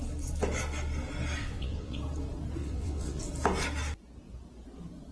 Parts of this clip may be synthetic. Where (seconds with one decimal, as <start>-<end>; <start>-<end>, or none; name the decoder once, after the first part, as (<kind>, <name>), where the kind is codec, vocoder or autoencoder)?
1.4-2.0 (vocoder, WaveNeXt); 2.6-3.2